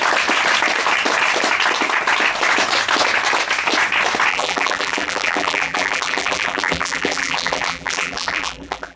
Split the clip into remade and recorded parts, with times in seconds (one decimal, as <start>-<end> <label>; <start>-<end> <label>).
0.0-4.3 recorded; 4.3-9.0 remade